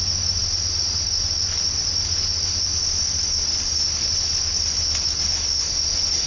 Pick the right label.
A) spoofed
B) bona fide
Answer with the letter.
B